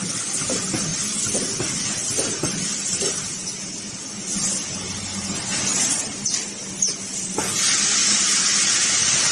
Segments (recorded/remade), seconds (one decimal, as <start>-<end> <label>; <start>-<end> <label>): 0.0-9.3 recorded